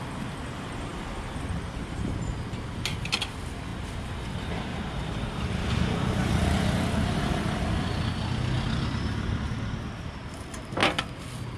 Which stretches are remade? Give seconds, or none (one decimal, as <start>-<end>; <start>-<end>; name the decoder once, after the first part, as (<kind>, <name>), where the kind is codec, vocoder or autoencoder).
3.7-4.2 (vocoder, BigVGAN v2); 4.7-7.7